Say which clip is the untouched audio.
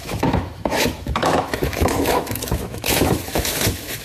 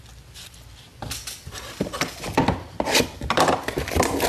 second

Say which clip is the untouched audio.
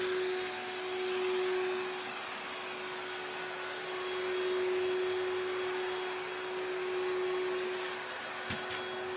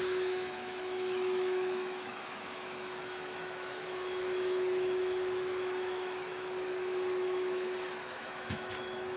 first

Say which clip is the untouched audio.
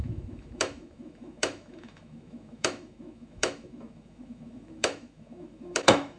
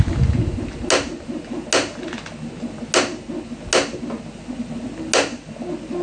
second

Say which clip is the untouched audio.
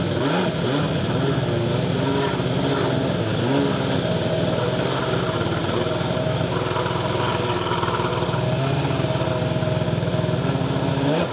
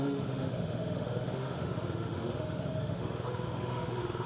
first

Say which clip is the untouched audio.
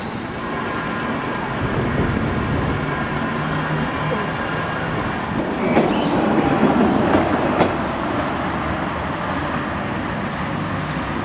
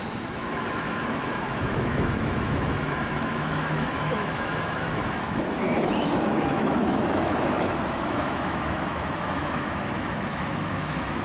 first